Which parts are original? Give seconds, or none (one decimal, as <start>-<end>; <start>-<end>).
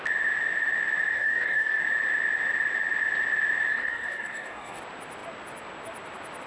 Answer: 0.0-1.1; 1.8-3.7; 4.8-6.5